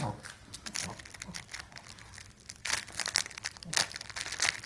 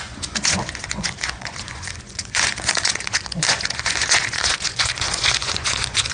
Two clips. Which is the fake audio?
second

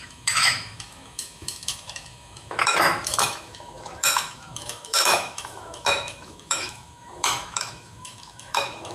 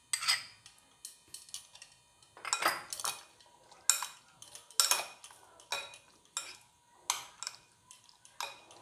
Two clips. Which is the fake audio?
first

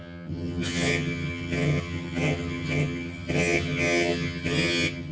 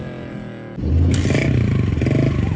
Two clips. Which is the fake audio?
first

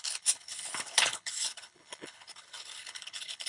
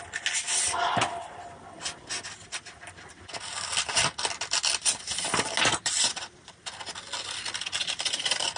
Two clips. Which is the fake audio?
first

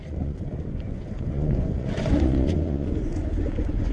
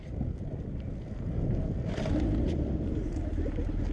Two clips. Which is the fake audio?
first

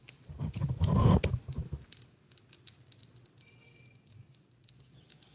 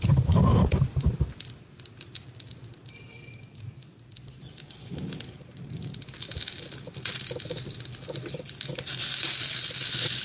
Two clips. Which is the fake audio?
second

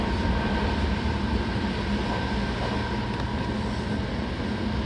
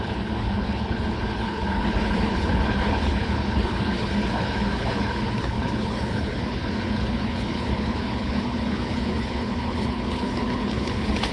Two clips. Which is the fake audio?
second